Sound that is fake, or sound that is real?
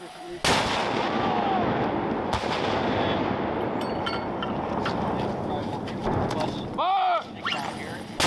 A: real